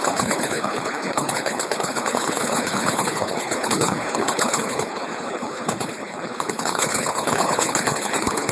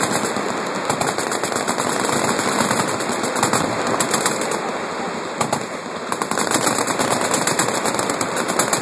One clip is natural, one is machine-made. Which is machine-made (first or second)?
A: first